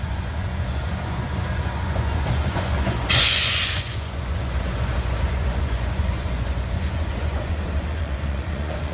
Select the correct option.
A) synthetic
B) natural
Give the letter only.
A